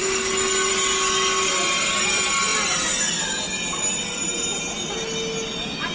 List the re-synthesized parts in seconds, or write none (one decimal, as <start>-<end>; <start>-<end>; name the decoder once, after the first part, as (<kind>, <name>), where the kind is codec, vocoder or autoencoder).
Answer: none